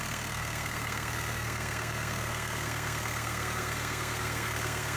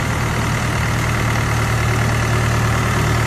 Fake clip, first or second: first